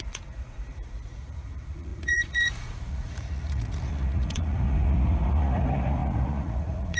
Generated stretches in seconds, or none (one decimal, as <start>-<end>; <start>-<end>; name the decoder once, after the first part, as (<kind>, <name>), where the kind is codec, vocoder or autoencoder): 0.0-7.0 (vocoder, Vocos)